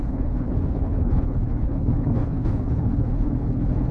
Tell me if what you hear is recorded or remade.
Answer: remade